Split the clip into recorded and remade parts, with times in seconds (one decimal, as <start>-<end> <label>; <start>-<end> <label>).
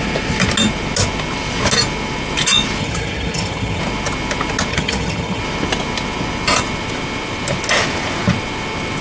0.0-2.8 recorded; 2.8-3.8 remade; 3.8-4.7 recorded; 4.7-5.4 remade; 5.4-9.0 recorded